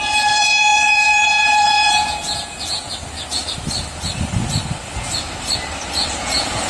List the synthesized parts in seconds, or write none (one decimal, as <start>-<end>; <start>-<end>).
0.0-3.0; 6.2-6.7